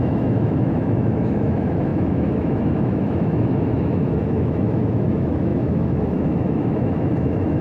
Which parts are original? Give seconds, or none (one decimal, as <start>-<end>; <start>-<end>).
none